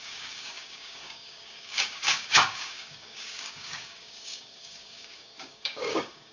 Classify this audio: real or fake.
fake